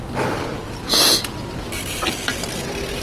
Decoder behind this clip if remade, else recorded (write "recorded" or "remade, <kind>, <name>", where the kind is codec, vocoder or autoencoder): recorded